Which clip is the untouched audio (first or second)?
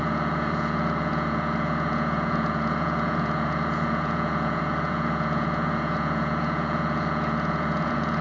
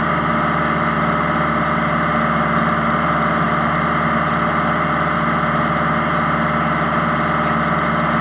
second